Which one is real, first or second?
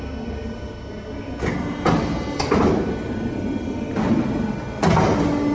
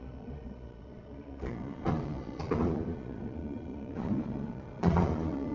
first